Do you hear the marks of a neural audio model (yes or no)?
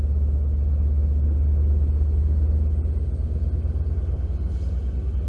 no